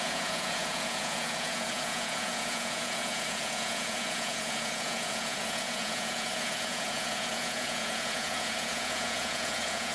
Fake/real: fake